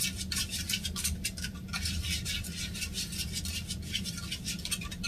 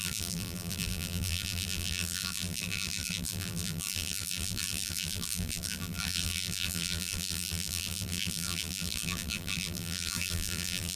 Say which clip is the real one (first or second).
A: first